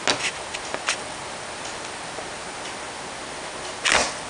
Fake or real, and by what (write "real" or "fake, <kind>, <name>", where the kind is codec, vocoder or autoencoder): real